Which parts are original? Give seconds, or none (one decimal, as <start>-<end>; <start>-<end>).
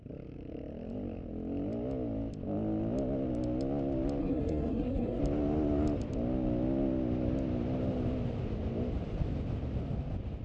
0.0-4.2; 5.2-10.4